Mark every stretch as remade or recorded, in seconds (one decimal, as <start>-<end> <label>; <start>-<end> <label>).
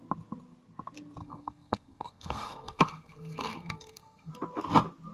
0.0-1.2 recorded; 1.2-4.3 remade; 4.3-5.1 recorded